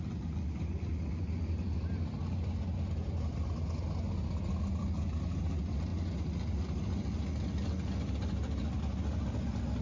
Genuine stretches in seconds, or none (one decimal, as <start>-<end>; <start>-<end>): 0.0-9.8